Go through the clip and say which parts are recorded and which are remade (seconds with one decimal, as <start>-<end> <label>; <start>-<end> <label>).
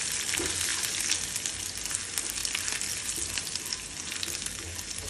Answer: 0.0-2.4 recorded; 2.4-3.6 remade; 3.6-5.1 recorded